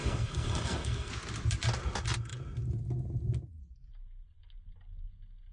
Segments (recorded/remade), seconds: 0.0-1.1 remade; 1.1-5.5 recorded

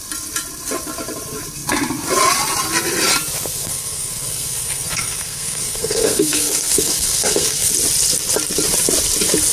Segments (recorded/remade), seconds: 0.0-3.5 recorded; 3.5-7.7 remade; 7.7-9.5 recorded

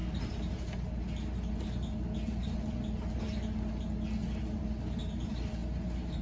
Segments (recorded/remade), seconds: 0.0-6.2 recorded

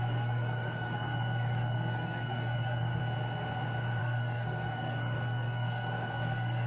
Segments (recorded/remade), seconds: 0.0-3.0 remade; 3.0-4.0 recorded; 4.0-6.7 remade